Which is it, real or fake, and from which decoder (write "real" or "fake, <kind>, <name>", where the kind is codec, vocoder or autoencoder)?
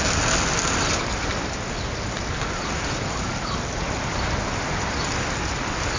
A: real